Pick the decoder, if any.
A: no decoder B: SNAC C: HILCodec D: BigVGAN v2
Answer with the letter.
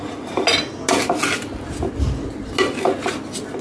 A